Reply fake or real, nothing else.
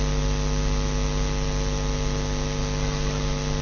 real